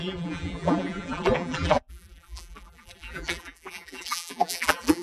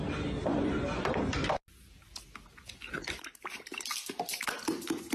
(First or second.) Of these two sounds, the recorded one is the second